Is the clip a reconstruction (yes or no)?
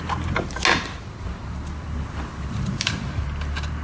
no